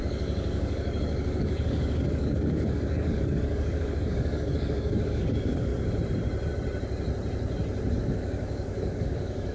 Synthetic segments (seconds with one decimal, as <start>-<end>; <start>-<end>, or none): 0.0-5.7; 8.0-9.5

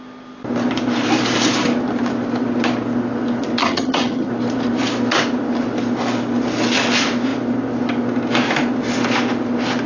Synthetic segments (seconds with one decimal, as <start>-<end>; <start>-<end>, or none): 3.6-4.3

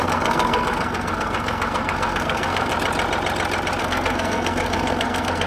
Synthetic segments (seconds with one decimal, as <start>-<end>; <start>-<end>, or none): 0.0-2.7; 3.8-5.5

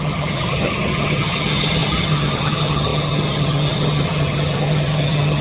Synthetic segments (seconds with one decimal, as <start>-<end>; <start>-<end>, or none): 0.0-5.4

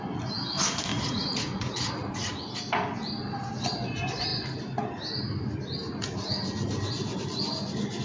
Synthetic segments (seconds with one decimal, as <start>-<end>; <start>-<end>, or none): 0.9-1.9

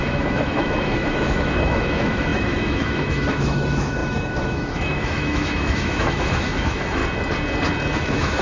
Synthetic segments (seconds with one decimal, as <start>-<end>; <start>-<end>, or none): 0.0-7.0; 8.0-8.4

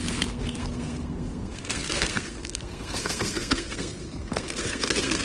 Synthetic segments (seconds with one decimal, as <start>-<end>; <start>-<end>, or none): 0.0-5.2